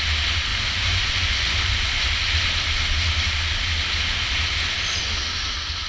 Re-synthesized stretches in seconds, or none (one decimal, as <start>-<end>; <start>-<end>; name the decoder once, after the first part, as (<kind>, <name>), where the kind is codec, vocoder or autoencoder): 0.5-2.1 (vocoder, Vocos)